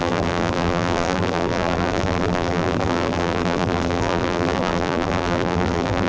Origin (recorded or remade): remade